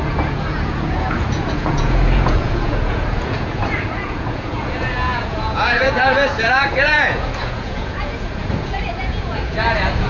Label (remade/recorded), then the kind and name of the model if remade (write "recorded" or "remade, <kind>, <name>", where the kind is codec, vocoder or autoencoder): remade, vocoder, Vocos